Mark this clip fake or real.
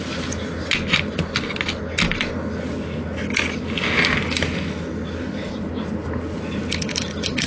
real